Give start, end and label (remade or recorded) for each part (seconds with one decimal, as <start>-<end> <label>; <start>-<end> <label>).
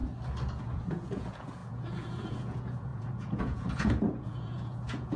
0.0-0.6 recorded; 0.6-5.2 remade